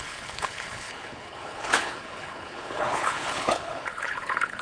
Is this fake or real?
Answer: fake